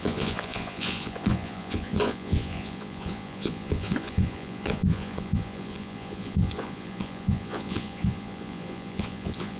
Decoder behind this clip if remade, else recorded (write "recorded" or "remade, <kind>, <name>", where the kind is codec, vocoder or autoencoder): remade, vocoder, Vocos